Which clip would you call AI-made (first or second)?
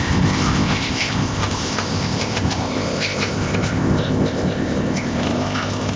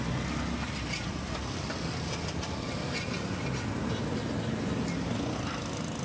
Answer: first